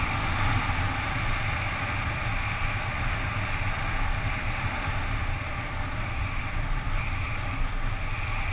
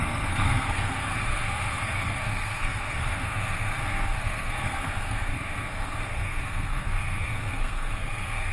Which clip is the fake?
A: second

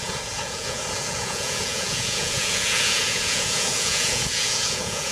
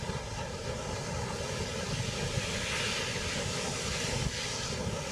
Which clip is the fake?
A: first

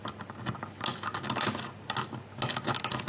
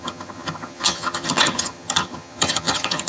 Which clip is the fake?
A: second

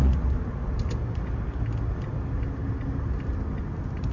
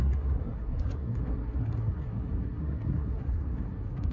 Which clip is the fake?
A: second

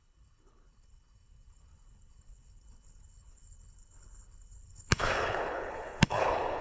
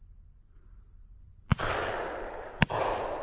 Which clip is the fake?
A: first